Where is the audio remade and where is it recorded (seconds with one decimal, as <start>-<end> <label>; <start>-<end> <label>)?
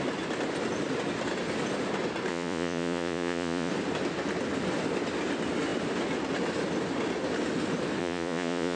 0.0-2.3 recorded; 2.3-3.7 remade; 3.7-8.0 recorded; 8.0-8.8 remade